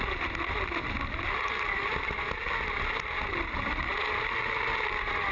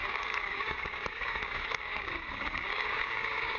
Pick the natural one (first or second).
first